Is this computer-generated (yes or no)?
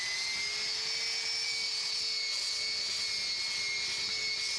no